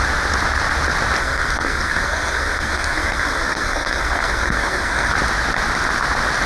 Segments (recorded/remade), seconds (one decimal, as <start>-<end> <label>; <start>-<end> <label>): 0.0-1.2 recorded; 1.2-5.1 remade; 5.1-6.5 recorded